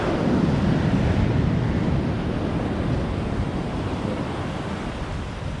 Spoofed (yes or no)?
no